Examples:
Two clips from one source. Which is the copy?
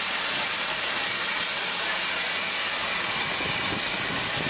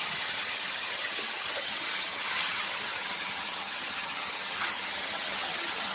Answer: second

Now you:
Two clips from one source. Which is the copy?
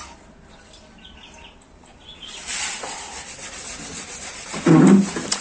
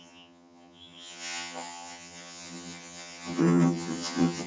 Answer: second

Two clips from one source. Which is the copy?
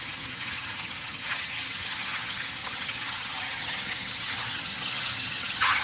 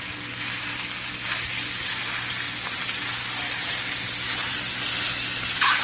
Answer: first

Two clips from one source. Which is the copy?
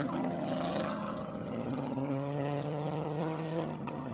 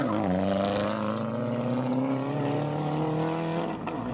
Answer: first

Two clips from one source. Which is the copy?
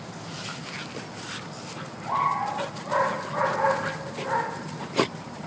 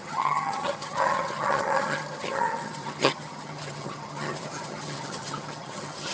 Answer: second